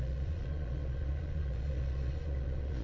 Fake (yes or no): yes